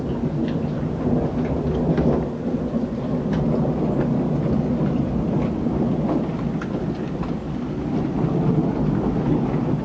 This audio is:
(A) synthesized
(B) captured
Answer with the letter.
B